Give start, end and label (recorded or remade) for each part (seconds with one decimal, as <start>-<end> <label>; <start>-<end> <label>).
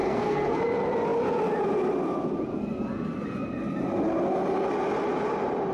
0.0-0.6 remade; 0.6-5.7 recorded